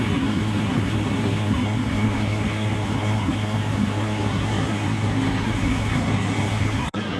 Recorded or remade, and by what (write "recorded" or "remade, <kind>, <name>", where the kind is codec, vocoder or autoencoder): remade, codec, SNAC